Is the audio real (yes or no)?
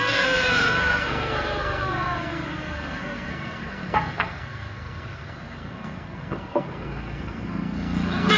no